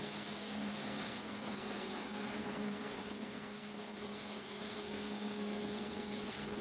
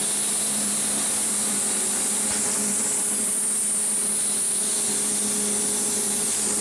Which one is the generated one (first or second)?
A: first